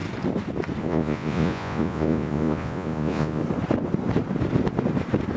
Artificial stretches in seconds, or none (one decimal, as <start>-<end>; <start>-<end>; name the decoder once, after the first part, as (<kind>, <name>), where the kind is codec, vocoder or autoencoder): 0.8-3.4 (vocoder, Vocos)